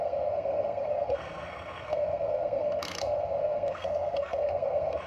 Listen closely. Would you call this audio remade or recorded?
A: remade